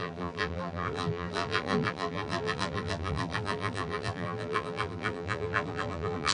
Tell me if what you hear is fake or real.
fake